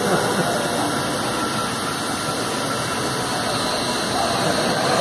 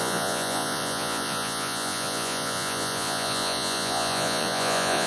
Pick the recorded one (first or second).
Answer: first